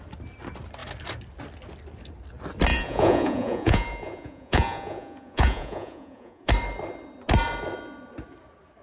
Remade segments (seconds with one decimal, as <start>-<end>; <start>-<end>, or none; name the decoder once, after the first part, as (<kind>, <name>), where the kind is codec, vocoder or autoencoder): 2.7-6.5 (vocoder, Vocos)

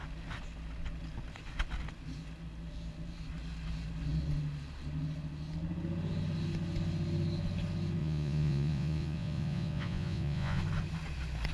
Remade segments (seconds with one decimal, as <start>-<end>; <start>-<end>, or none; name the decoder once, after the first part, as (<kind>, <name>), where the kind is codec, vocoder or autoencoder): 8.0-10.6 (vocoder, Vocos)

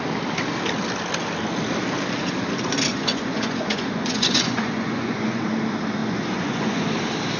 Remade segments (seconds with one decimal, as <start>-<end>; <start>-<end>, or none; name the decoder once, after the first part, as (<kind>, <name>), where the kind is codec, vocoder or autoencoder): 2.9-5.4 (vocoder, Vocos); 6.0-6.8